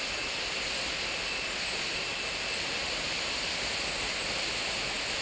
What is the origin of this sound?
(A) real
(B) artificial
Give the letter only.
A